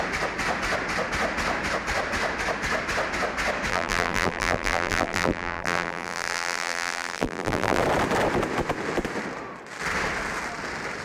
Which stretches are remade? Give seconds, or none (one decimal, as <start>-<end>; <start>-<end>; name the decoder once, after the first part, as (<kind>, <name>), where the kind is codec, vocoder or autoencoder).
3.7-7.8 (vocoder, BigVGAN v2)